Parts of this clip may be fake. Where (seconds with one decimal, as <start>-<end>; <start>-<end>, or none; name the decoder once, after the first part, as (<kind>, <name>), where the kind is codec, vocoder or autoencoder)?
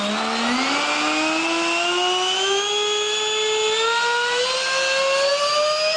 none